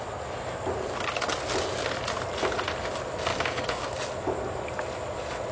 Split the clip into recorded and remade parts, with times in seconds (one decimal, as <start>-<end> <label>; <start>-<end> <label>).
0.0-3.3 recorded; 3.3-4.0 remade; 4.0-5.5 recorded